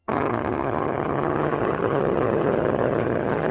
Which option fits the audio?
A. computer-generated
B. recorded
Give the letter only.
A